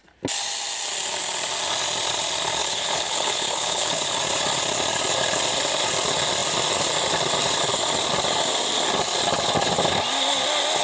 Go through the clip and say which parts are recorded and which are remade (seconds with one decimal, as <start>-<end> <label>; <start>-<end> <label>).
0.0-2.6 recorded; 2.6-4.0 remade; 4.0-10.8 recorded